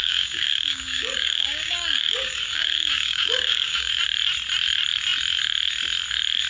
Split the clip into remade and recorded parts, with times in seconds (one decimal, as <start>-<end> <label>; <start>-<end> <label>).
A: 0.0-3.9 remade; 3.9-6.5 recorded